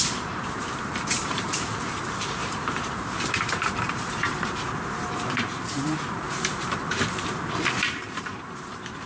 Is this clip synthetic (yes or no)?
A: yes